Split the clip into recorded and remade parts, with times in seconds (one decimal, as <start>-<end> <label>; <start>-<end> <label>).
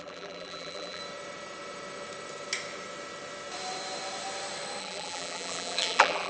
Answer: 0.0-1.0 remade; 1.0-4.8 recorded; 4.8-6.3 remade